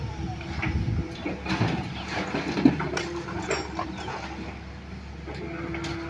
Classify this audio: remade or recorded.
recorded